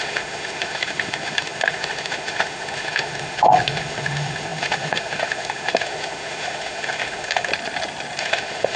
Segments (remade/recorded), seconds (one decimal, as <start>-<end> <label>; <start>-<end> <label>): 0.0-7.5 remade; 7.5-8.2 recorded; 8.2-8.8 remade